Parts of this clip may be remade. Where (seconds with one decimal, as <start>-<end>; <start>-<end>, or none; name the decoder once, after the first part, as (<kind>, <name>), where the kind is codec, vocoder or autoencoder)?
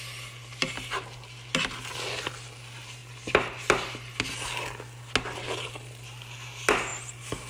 none